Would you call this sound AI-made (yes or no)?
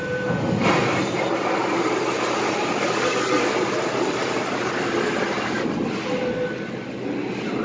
no